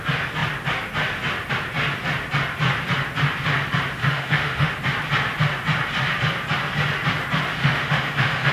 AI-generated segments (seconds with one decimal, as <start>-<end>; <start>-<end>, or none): 4.0-4.7; 7.6-8.5